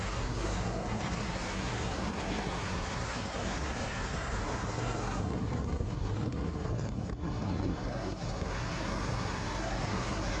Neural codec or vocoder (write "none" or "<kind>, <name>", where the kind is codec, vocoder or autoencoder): codec, SNAC